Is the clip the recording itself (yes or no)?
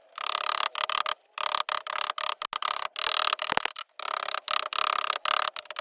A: yes